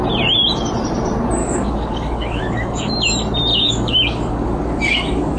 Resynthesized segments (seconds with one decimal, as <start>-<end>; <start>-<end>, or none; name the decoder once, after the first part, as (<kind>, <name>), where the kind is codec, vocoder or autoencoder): 1.4-2.9 (codec, DAC); 3.5-5.4